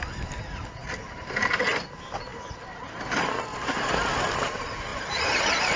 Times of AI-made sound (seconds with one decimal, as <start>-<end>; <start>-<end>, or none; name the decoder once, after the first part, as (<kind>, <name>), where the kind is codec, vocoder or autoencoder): 0.8-1.6 (vocoder, BigVGAN v2); 2.3-2.9